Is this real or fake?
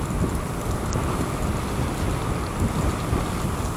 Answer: real